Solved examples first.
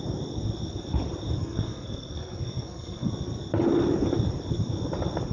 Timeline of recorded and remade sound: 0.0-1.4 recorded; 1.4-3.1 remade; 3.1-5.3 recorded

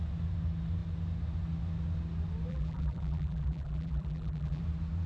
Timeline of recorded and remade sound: 0.0-2.5 recorded; 2.5-4.6 remade; 4.6-5.1 recorded

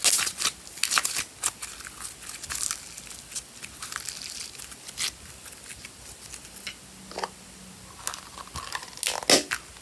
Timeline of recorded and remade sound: 0.0-9.8 recorded